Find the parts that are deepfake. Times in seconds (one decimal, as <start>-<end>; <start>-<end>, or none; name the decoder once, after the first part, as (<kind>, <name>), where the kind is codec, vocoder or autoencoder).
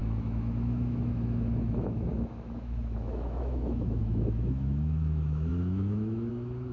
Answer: 0.0-6.7 (autoencoder, DAC-VAE)